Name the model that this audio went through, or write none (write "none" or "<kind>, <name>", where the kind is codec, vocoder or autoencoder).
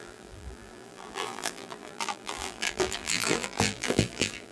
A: vocoder, BigVGAN v2